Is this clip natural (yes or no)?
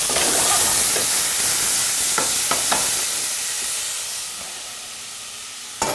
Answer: yes